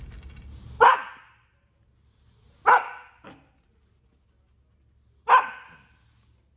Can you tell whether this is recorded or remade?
recorded